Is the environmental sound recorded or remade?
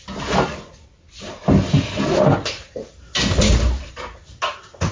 recorded